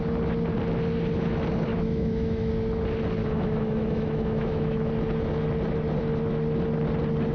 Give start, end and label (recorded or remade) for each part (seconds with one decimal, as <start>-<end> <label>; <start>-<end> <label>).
0.0-1.7 recorded; 1.7-2.5 remade; 2.5-3.2 recorded; 3.2-4.9 remade; 4.9-7.3 recorded